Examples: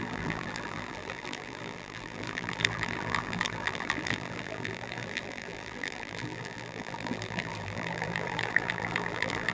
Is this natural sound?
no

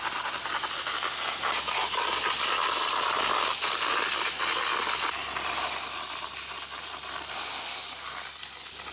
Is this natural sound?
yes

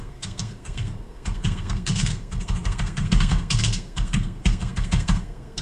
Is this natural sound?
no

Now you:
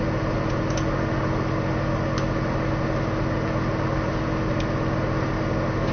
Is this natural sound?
yes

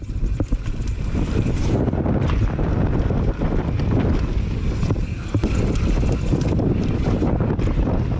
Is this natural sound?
yes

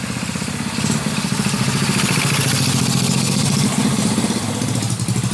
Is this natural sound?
yes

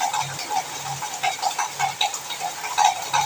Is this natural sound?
yes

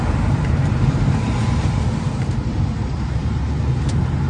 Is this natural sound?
no